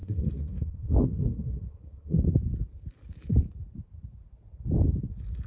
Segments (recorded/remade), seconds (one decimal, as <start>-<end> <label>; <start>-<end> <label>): 0.0-2.2 remade; 2.2-5.5 recorded